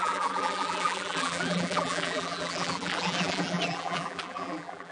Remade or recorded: remade